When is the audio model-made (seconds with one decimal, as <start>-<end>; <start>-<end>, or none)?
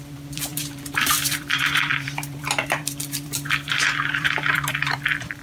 0.0-5.4